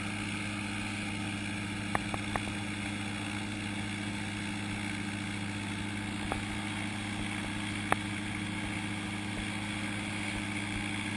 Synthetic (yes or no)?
no